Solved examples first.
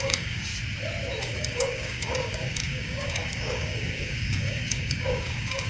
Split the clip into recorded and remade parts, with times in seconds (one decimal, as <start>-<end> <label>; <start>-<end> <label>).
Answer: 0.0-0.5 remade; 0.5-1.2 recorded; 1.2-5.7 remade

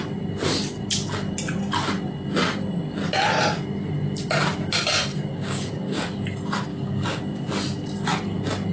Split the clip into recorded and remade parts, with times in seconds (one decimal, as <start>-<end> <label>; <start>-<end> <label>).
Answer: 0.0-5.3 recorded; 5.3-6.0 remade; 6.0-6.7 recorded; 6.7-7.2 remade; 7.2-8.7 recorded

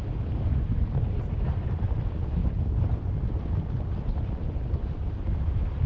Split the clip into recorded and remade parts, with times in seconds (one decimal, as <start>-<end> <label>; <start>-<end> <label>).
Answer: 0.0-5.9 recorded